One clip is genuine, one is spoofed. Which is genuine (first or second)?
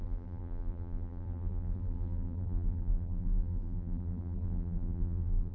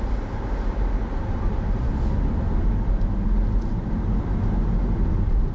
second